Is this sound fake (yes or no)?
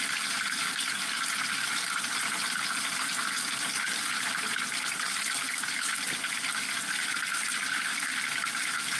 no